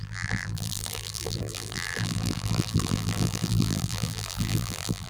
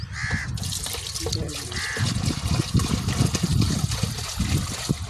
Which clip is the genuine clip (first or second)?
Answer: second